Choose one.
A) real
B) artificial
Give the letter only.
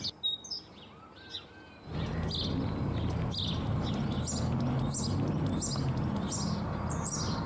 A